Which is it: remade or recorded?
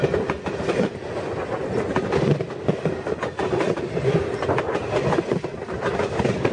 recorded